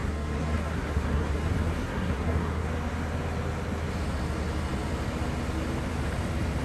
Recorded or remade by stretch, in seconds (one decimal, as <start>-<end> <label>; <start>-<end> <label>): 0.0-2.7 remade; 2.7-6.6 recorded